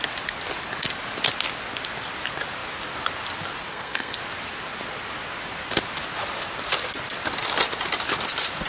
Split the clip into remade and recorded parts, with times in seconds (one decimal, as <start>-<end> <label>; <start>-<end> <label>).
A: 0.0-3.7 recorded; 3.7-4.2 remade; 4.2-8.7 recorded